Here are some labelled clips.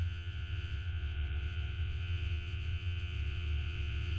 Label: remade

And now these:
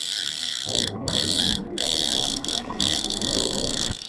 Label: remade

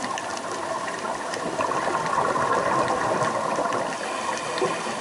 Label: remade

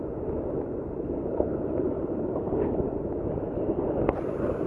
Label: recorded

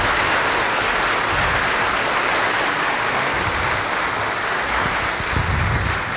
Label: recorded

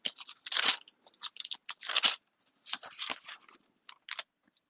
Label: recorded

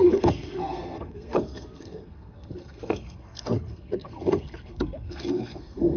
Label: remade